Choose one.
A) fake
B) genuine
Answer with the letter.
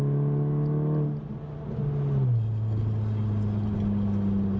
B